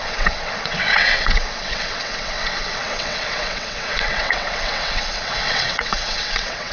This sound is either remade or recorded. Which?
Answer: remade